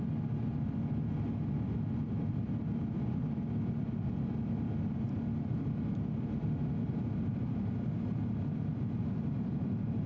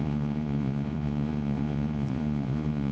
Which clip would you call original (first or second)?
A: first